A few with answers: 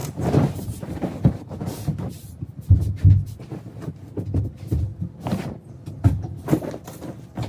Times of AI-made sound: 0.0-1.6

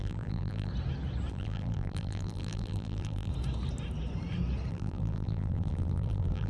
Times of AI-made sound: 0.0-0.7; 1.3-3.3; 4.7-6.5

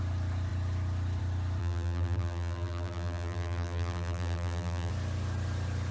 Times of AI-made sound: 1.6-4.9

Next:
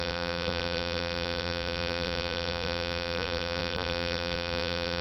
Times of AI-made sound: 0.0-5.0

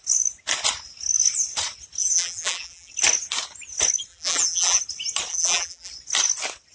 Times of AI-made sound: 2.0-2.9; 4.1-4.8; 5.3-5.9